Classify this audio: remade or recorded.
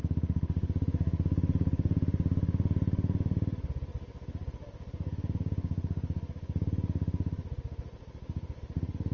recorded